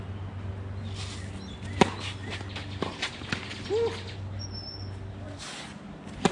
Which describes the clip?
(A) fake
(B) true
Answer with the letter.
B